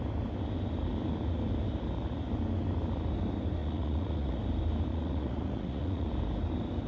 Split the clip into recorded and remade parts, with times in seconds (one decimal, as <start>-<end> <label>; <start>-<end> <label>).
0.0-3.6 recorded; 3.6-4.4 remade; 4.4-4.9 recorded; 4.9-6.1 remade; 6.1-6.9 recorded

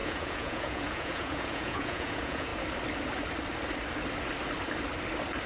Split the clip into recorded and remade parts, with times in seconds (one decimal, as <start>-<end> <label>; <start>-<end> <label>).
0.0-2.5 remade; 2.5-5.5 recorded

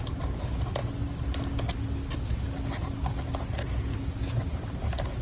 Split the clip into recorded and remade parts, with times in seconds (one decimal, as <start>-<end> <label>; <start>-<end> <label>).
0.0-5.2 recorded

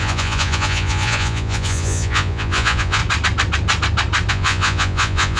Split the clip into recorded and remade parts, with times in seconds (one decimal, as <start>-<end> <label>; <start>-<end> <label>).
0.0-3.0 remade; 3.0-4.3 recorded; 4.3-5.4 remade

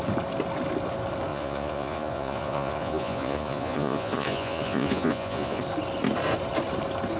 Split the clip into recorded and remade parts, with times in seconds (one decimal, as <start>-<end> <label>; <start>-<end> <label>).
0.0-1.3 recorded; 1.3-5.6 remade; 5.6-7.2 recorded

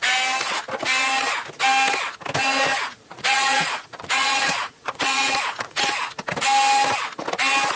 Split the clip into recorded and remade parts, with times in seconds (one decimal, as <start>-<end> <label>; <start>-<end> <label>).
0.0-2.7 recorded; 2.7-5.8 remade; 5.8-7.8 recorded

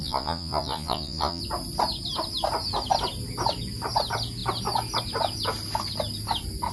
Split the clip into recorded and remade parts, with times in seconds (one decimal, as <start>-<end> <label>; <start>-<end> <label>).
0.0-1.4 remade; 1.4-6.7 recorded